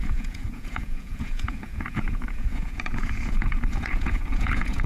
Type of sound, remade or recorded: remade